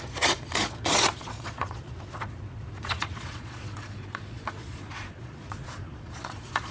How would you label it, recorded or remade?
remade